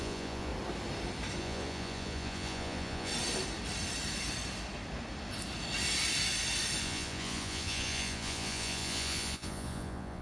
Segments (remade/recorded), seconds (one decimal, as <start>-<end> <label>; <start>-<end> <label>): 0.0-0.5 remade; 0.5-1.4 recorded; 1.4-3.1 remade; 3.1-6.8 recorded; 6.8-10.2 remade